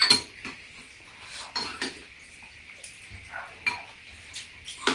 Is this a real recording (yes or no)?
yes